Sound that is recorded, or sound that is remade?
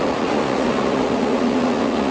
remade